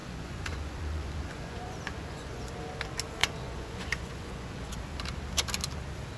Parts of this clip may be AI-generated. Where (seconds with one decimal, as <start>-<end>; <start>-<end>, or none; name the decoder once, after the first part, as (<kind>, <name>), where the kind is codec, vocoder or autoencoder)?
0.0-2.5 (vocoder, Vocos); 3.2-4.8